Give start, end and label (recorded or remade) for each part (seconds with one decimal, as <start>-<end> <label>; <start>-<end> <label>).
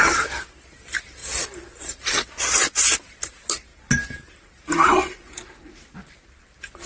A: 0.0-6.9 recorded